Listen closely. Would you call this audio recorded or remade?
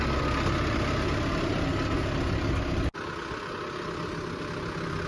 recorded